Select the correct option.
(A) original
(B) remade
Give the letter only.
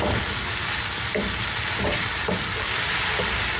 A